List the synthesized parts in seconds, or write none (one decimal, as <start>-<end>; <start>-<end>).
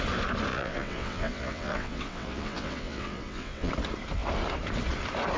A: 0.5-3.7